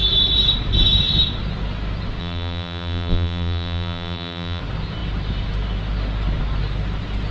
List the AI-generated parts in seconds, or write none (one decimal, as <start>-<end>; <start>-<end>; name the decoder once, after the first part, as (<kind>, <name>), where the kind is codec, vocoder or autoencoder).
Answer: 2.2-4.6 (vocoder, BigVGAN v2)